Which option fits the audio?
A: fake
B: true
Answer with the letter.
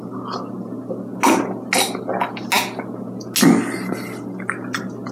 B